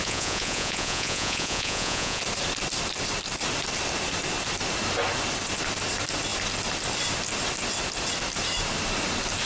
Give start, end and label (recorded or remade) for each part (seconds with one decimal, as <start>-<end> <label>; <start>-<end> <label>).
0.0-2.2 remade; 2.2-9.5 recorded